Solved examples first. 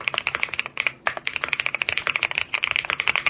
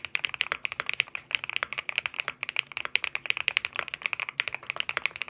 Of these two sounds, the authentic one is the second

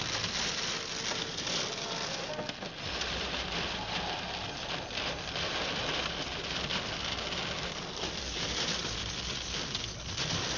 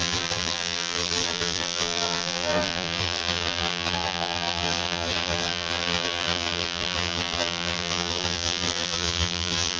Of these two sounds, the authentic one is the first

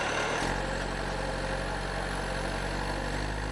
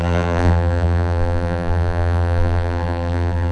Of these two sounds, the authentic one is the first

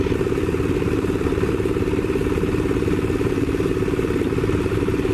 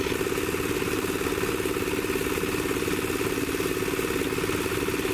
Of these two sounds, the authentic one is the second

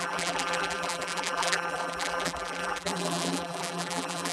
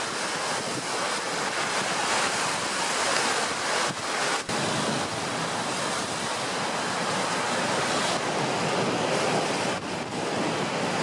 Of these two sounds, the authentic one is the second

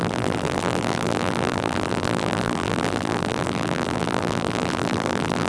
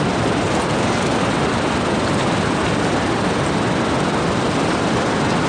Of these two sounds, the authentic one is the second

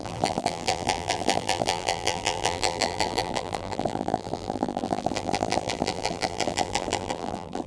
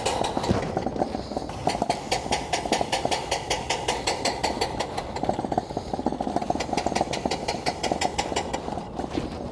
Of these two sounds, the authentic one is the second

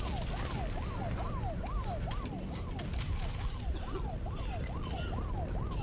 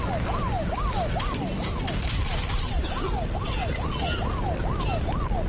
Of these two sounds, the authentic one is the second